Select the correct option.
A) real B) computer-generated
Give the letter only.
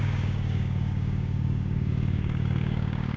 B